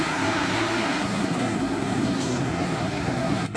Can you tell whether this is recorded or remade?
remade